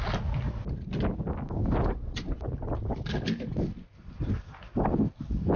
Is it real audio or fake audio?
real